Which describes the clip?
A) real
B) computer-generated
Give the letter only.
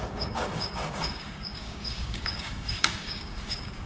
B